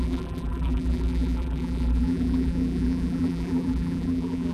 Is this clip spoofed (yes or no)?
yes